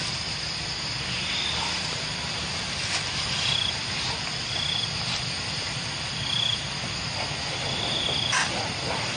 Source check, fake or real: real